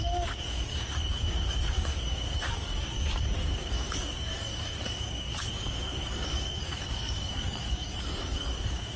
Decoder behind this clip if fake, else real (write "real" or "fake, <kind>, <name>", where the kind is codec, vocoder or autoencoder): fake, codec, DAC